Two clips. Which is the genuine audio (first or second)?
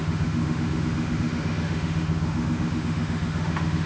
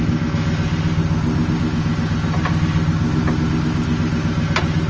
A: second